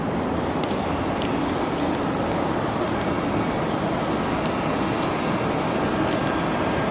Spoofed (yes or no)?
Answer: no